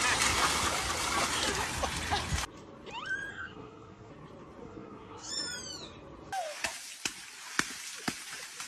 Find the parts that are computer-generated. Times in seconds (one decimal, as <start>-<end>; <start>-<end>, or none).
3.3-4.1; 4.6-5.3